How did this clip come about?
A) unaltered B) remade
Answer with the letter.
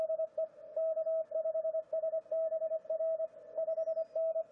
A